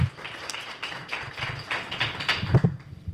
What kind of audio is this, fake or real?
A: real